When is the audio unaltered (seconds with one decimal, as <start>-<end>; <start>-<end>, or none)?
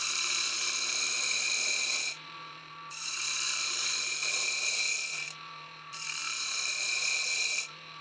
none